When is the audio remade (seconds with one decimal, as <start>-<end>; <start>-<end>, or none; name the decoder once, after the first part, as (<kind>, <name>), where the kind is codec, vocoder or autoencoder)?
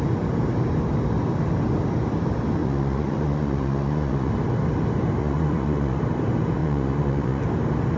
2.6-4.3 (vocoder, Vocos); 5.2-6.0; 6.6-7.4